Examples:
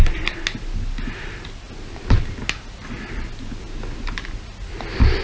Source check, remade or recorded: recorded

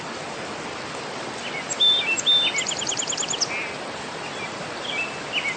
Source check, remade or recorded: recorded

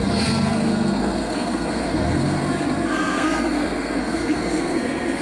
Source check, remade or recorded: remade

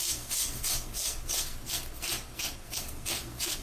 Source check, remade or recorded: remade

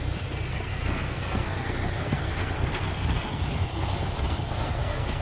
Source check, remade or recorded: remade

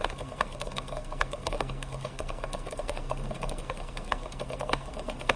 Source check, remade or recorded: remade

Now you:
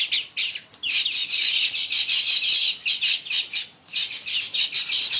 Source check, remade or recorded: recorded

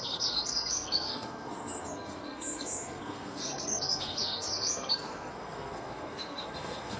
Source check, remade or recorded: remade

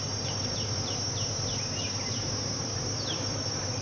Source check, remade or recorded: recorded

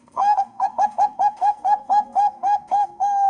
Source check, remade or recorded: remade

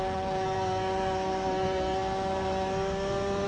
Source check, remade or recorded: remade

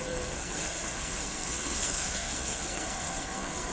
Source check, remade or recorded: remade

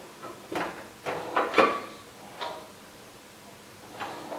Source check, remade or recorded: recorded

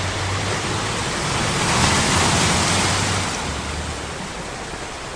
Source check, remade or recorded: recorded